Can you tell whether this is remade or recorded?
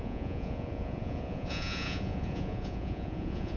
remade